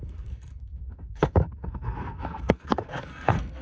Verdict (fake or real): fake